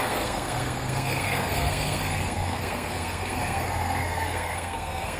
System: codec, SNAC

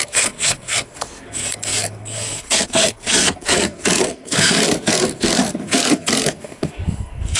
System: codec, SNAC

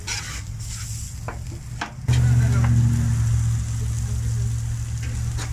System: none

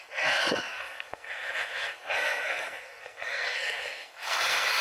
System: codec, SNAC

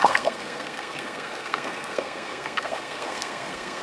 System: codec, SNAC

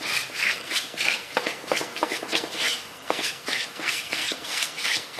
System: codec, SNAC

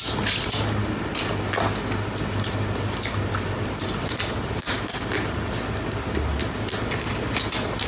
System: none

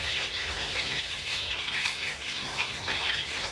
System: codec, SNAC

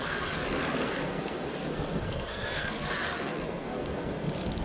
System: codec, SNAC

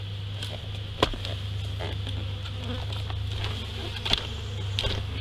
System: none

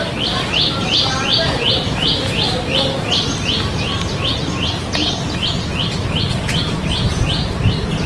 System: none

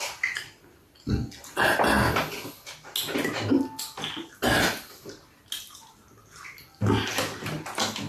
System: none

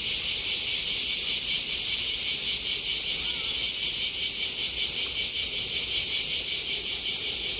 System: none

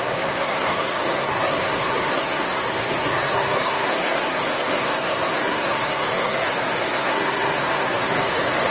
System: codec, SNAC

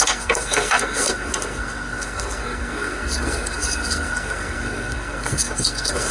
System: codec, SNAC